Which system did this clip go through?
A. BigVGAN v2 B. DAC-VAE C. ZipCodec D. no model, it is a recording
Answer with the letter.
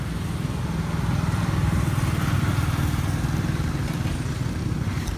D